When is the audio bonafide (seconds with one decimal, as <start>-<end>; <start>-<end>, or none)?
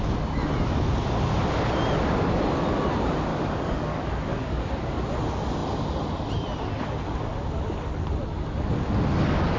0.0-3.3; 4.7-9.6